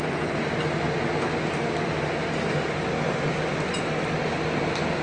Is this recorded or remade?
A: recorded